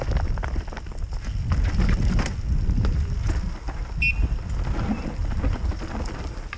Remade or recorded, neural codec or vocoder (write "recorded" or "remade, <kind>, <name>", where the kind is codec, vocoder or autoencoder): recorded